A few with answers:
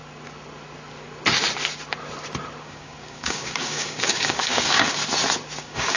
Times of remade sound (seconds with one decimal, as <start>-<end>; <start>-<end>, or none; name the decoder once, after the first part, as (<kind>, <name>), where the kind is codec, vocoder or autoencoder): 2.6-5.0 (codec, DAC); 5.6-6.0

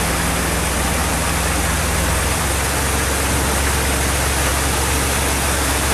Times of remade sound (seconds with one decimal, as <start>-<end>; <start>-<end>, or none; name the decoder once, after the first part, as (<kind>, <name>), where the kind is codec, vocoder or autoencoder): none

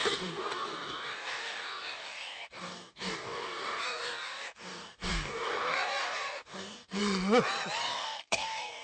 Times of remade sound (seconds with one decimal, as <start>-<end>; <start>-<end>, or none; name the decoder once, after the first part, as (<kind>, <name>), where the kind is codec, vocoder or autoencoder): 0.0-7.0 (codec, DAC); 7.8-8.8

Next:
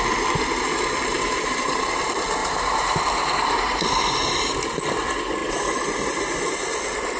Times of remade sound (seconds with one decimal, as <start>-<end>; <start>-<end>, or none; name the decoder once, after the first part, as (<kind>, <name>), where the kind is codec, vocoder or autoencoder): 1.1-1.8 (vocoder, BigVGAN v2); 2.4-3.0